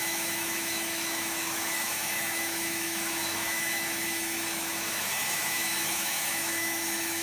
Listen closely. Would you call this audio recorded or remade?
remade